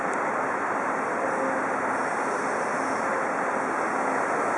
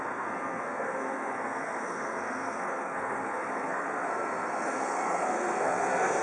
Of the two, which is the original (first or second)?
first